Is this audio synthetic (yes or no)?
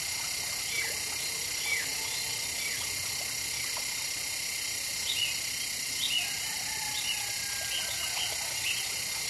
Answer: no